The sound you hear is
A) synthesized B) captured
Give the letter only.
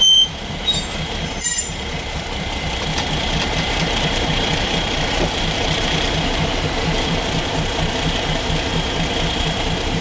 A